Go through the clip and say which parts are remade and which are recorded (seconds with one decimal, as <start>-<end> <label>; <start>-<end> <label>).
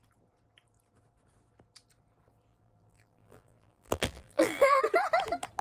0.0-2.5 recorded; 2.5-4.8 remade; 4.8-5.6 recorded